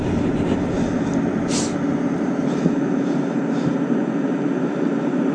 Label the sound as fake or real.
fake